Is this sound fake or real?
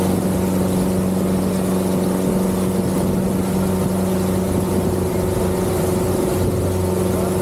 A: real